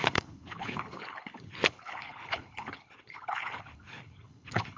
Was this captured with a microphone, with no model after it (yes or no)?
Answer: no